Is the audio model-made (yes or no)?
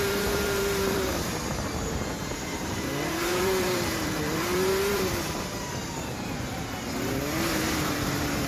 yes